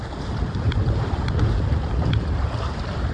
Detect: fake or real fake